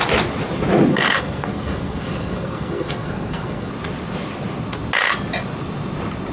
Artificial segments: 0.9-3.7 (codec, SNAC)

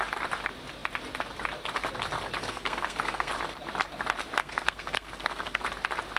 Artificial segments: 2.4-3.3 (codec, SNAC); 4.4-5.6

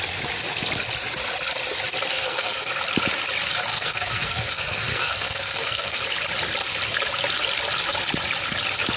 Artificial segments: 2.1-2.6 (codec, SNAC); 3.7-6.0